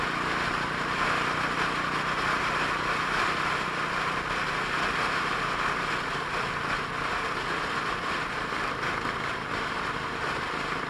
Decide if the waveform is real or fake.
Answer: real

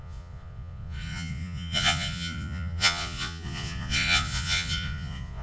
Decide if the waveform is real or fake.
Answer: fake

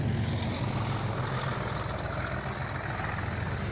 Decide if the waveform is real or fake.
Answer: real